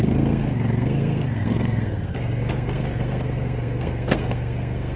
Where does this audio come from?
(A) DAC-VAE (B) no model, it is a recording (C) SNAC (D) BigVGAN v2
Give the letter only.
C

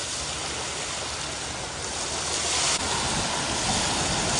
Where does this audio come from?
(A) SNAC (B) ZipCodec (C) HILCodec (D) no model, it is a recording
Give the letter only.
D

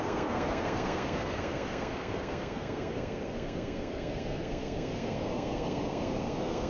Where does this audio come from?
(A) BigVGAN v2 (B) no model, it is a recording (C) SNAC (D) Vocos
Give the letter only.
C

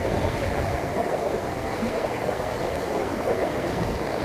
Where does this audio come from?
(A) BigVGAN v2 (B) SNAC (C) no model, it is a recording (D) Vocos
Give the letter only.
B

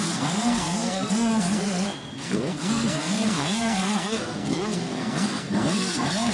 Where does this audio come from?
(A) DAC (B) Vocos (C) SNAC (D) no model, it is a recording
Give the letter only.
C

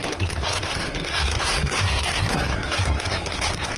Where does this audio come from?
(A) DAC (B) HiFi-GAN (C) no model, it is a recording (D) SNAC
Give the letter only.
D